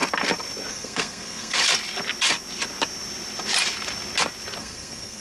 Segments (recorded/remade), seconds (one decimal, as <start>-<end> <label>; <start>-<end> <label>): 0.0-0.7 recorded; 0.7-1.6 remade; 1.6-4.6 recorded; 4.6-5.2 remade